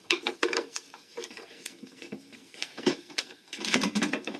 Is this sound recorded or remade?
remade